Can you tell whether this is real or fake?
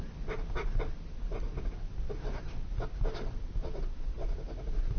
real